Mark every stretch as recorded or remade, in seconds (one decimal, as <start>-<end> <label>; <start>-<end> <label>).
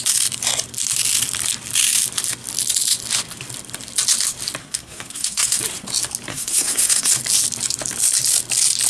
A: 0.0-4.6 recorded; 4.6-5.6 remade; 5.6-6.3 recorded; 6.3-7.1 remade; 7.1-8.9 recorded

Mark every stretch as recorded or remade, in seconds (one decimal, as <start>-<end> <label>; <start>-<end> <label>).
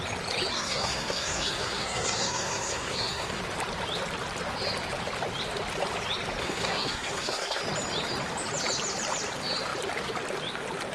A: 0.0-0.5 recorded; 0.5-3.4 remade; 3.4-6.4 recorded; 6.4-7.6 remade; 7.6-10.9 recorded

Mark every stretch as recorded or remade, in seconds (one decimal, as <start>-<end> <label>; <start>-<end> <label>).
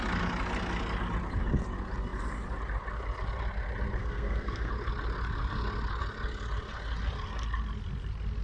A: 0.0-4.0 recorded; 4.0-4.7 remade; 4.7-8.4 recorded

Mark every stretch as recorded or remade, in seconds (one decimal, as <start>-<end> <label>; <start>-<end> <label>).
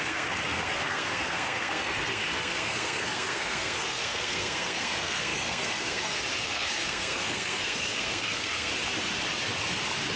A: 0.0-8.7 remade; 8.7-10.2 recorded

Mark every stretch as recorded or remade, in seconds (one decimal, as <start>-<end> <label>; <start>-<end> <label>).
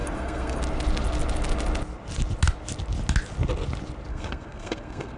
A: 0.0-0.6 remade; 0.6-4.1 recorded; 4.1-5.2 remade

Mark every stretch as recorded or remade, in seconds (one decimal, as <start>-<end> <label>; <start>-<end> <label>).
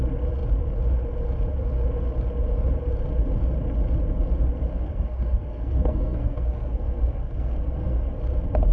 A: 0.0-4.7 recorded; 4.7-8.2 remade; 8.2-8.7 recorded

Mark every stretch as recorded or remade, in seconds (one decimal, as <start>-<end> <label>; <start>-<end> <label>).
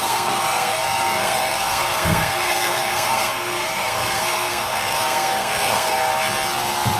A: 0.0-6.1 remade; 6.1-7.0 recorded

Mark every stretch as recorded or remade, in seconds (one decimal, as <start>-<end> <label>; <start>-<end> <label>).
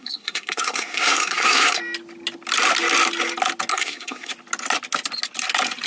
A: 0.0-1.8 remade; 1.8-3.7 recorded; 3.7-4.3 remade; 4.3-5.9 recorded